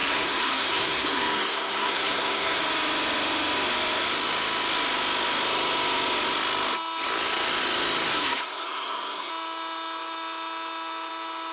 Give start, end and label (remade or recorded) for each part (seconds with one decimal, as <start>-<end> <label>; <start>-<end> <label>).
0.0-2.6 remade; 2.6-8.1 recorded; 8.1-9.3 remade; 9.3-11.5 recorded